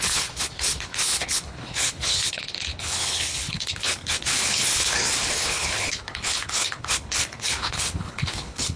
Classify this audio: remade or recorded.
remade